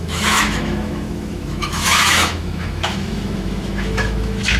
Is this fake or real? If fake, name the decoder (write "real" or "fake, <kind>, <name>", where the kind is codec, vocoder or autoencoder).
fake, autoencoder, DAC-VAE